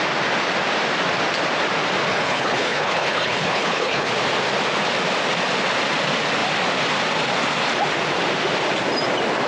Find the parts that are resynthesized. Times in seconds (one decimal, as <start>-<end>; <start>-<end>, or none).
2.1-4.1